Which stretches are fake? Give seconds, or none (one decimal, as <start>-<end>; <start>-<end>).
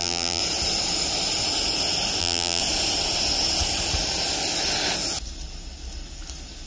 0.0-0.4; 2.2-2.6